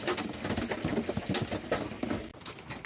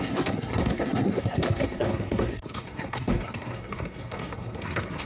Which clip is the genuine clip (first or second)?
first